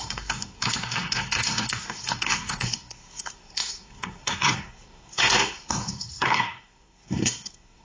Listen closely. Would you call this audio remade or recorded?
remade